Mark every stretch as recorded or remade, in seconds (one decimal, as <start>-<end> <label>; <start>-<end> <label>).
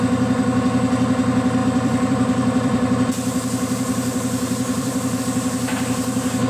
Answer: 0.0-1.6 recorded; 1.6-5.2 remade; 5.2-6.5 recorded